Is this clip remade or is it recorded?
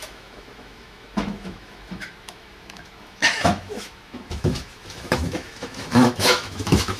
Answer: remade